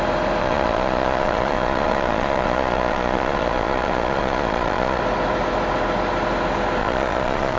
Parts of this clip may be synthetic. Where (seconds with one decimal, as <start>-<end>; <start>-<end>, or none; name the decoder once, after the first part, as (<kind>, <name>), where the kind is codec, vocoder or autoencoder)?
0.4-5.0 (vocoder, Vocos); 6.8-7.6

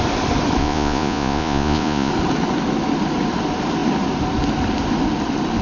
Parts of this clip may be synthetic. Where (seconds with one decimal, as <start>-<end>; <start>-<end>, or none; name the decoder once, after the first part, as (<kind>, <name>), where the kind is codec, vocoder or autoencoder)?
0.6-2.1 (vocoder, Vocos)

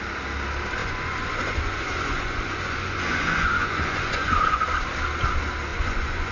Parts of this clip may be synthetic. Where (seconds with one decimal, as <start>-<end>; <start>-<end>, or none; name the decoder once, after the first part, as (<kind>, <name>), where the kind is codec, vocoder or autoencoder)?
0.8-4.6 (vocoder, Vocos); 5.7-6.3

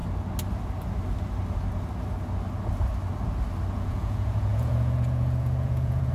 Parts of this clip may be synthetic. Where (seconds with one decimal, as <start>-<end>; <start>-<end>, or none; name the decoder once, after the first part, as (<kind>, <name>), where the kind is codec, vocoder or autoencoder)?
3.7-6.1 (vocoder, Vocos)

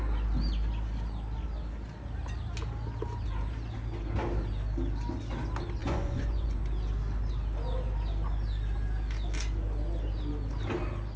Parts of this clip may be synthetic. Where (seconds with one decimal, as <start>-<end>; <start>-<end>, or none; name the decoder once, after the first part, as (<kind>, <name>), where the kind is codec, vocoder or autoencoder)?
5.8-6.6 (vocoder, Vocos)

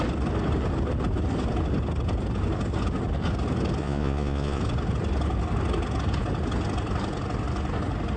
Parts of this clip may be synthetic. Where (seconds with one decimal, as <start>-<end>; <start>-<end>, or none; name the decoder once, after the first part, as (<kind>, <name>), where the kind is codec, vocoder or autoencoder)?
3.8-4.6 (vocoder, Vocos)

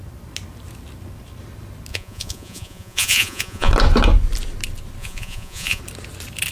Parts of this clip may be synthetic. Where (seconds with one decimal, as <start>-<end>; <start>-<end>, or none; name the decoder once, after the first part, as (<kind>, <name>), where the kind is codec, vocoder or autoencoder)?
1.9-3.7 (vocoder, Vocos); 5.0-5.8

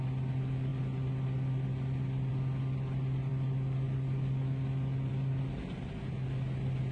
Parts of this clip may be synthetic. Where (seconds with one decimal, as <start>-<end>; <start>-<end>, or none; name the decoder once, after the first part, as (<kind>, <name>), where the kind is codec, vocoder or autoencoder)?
none